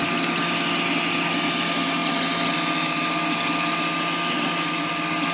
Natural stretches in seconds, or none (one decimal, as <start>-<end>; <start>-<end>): 0.0-5.3